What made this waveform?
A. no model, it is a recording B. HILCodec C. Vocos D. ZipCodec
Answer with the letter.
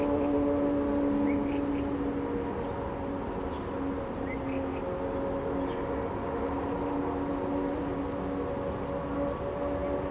A